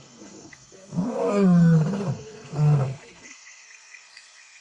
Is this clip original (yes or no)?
no